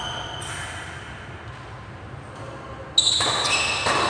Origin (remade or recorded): recorded